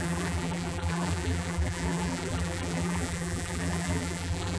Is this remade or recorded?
remade